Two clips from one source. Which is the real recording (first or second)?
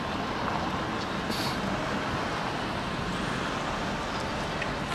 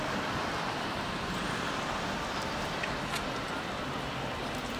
first